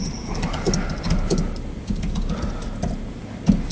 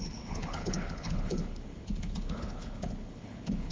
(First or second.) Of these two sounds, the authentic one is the first